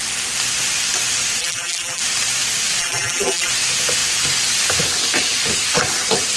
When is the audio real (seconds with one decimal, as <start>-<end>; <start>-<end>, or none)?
0.0-1.4; 2.0-2.8; 3.5-6.4